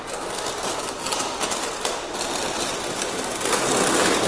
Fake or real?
real